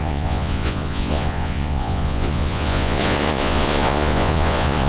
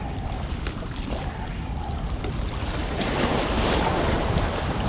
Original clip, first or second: second